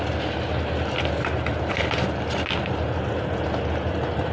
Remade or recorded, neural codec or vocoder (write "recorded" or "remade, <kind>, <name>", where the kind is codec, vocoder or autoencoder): recorded